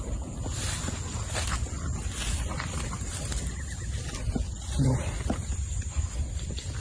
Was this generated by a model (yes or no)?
no